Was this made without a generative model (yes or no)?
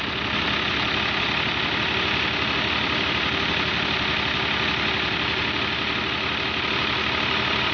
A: yes